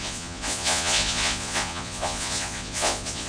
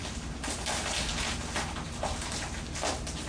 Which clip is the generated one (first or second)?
first